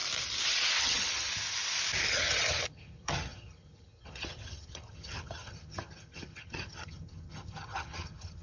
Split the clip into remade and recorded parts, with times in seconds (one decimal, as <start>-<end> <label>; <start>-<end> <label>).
0.0-0.8 recorded; 0.8-1.3 remade; 1.3-2.1 recorded; 2.1-8.4 remade